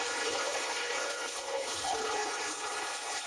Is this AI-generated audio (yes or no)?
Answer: yes